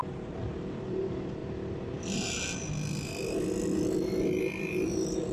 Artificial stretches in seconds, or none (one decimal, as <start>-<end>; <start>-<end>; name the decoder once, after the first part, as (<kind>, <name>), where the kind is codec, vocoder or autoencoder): 0.0-1.4 (vocoder, BigVGAN v2); 4.4-5.3